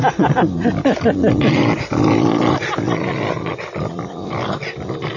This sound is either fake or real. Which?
fake